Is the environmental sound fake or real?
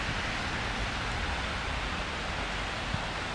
real